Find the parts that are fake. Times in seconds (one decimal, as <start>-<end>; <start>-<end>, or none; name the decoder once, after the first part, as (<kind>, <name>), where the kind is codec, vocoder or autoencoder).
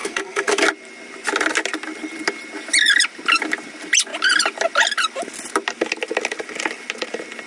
0.0-0.6 (codec, SNAC)